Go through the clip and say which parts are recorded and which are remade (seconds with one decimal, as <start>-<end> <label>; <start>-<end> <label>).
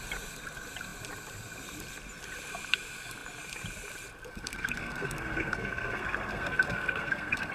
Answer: 0.0-4.3 recorded; 4.3-7.5 remade